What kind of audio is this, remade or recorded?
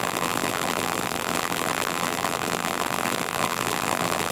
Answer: remade